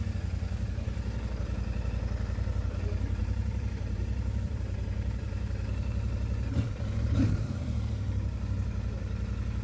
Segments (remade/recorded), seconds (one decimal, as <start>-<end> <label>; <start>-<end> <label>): 0.0-3.2 recorded; 3.2-8.4 remade; 8.4-9.6 recorded